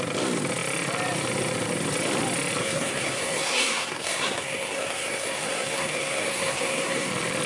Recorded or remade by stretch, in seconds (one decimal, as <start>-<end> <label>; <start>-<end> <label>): 0.0-2.6 recorded; 2.6-7.1 remade; 7.1-7.5 recorded